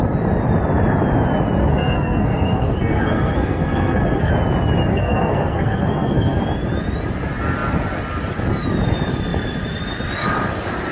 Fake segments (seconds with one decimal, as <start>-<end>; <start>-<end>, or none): 1.6-4.3; 4.9-6.4